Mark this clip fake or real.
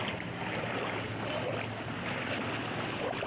real